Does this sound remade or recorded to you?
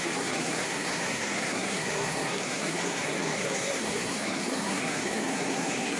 remade